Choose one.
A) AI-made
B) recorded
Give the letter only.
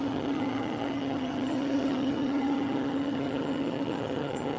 A